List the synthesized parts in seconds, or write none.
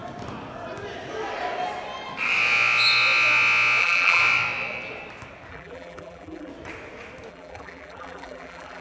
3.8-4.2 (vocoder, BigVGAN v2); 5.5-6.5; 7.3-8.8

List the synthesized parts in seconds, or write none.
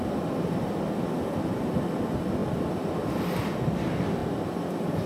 none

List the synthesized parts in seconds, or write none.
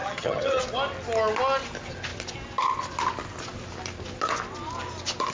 0.0-0.6 (vocoder, HiFi-GAN)